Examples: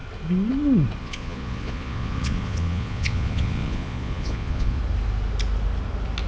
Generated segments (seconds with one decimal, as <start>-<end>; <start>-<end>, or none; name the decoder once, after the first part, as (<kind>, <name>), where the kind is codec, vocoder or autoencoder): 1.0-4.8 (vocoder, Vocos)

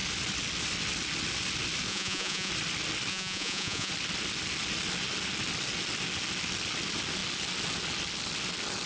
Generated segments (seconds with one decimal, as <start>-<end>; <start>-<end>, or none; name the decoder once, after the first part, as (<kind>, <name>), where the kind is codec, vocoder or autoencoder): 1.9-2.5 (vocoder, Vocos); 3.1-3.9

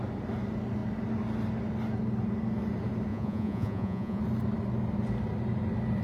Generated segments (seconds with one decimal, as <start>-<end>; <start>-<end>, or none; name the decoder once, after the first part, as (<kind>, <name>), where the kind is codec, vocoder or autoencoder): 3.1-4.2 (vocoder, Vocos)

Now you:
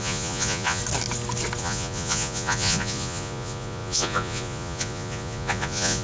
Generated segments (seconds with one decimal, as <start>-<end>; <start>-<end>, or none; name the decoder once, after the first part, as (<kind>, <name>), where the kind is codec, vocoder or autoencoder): 0.0-0.8 (vocoder, Vocos); 1.6-6.0

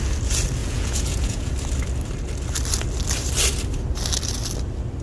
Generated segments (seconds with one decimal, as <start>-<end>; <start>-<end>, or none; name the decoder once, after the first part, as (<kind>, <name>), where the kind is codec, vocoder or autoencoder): 0.6-1.5 (vocoder, Vocos)